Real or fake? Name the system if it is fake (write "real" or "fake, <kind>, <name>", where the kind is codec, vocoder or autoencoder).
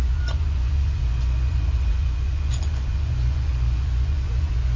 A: fake, vocoder, Vocos